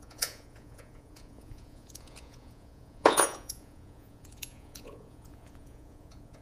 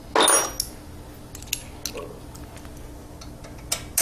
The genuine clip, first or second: second